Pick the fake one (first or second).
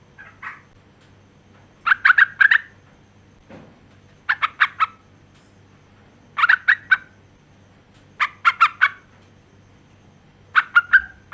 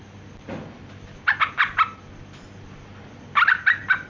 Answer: second